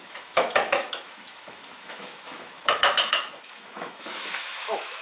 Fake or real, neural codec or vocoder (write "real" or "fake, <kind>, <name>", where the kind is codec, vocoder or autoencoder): fake, autoencoder, DAC-VAE